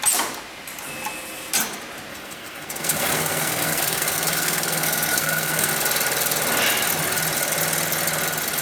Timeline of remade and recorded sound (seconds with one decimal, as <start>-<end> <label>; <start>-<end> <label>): 0.0-2.1 recorded; 2.1-5.7 remade; 5.7-8.6 recorded